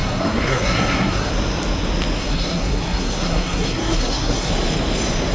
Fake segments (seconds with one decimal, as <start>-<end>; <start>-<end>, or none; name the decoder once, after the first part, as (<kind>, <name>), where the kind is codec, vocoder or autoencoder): 0.0-1.3 (codec, SNAC); 2.2-4.5